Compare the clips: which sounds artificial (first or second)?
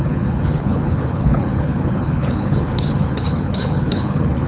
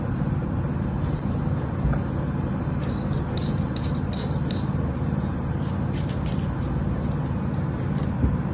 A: first